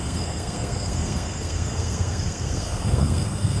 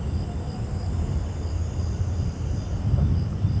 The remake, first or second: first